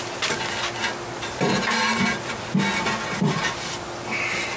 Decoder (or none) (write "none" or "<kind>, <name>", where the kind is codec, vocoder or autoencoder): none